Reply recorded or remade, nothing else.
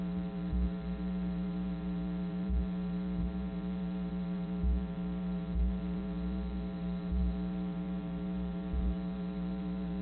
remade